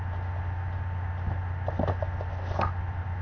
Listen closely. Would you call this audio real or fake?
real